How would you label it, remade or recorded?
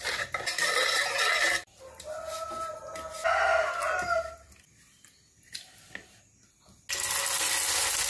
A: recorded